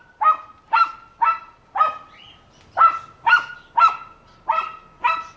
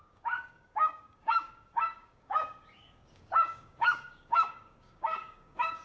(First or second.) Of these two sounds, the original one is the first